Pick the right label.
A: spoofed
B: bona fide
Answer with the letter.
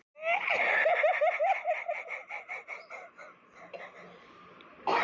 B